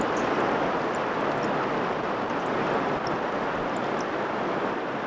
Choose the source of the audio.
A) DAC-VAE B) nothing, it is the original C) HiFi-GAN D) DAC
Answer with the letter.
B